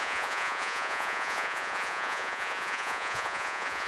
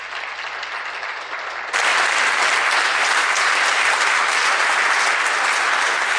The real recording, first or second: second